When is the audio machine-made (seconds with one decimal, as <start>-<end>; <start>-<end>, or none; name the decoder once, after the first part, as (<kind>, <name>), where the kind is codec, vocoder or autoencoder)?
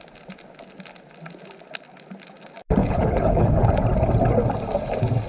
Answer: 2.8-3.7 (codec, HILCodec)